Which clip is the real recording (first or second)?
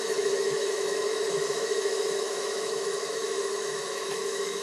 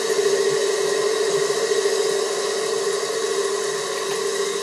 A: second